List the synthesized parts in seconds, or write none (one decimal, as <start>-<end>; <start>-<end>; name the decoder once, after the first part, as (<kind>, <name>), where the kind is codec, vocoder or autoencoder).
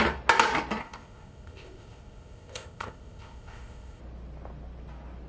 0.8-4.0 (codec, ZipCodec)